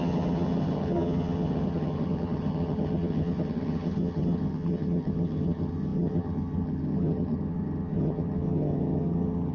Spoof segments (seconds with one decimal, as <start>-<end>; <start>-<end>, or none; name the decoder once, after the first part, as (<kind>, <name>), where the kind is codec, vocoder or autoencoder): 0.0-9.5 (vocoder, HiFi-GAN)

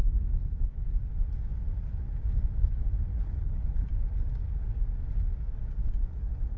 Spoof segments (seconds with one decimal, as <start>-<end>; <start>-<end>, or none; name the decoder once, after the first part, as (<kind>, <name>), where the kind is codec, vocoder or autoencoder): 3.1-3.9 (codec, HILCodec)

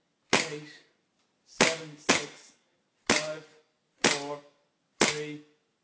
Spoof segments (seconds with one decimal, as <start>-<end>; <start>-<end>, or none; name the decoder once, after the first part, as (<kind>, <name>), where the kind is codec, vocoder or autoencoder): none

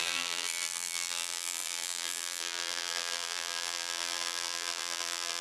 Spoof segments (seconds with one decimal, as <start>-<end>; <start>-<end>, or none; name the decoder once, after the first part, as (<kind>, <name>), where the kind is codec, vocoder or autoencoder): 0.0-5.4 (vocoder, BigVGAN v2)

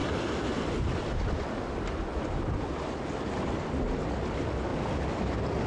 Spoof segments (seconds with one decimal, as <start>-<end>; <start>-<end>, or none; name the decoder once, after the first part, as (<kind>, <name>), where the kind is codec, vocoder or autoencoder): none

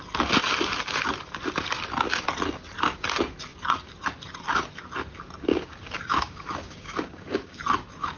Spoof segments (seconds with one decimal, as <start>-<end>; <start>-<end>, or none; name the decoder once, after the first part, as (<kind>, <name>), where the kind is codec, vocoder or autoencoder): 5.5-7.6 (codec, DAC)